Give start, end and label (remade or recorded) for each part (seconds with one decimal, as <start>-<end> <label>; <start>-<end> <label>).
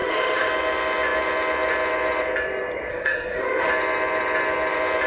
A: 0.0-0.5 remade; 0.5-2.9 recorded; 2.9-3.7 remade; 3.7-5.1 recorded